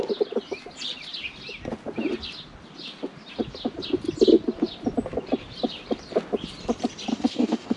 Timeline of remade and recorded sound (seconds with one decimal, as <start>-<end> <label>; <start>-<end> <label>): 0.0-7.1 recorded; 7.1-7.8 remade